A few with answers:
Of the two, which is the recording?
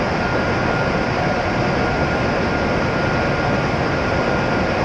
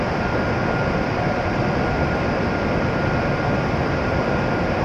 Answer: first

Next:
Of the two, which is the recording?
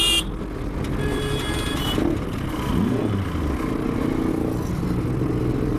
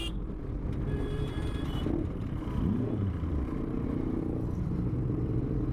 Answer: first